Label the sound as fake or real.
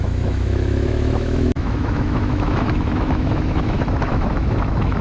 fake